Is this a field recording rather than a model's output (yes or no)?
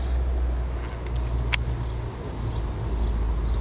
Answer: yes